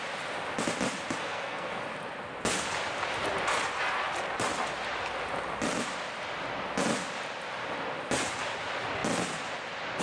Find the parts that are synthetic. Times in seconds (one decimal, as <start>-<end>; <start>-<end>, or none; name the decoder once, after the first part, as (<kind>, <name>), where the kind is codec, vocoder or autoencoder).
1.2-1.8 (codec, SNAC)